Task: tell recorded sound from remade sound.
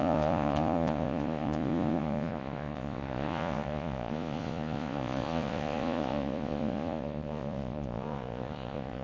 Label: remade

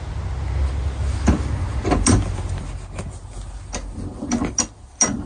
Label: recorded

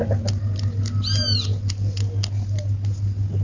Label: recorded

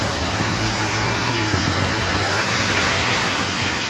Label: remade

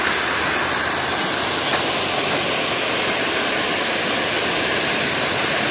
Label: recorded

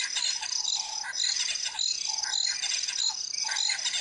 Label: recorded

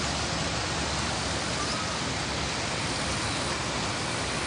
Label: recorded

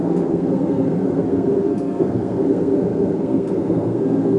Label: remade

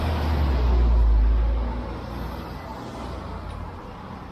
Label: recorded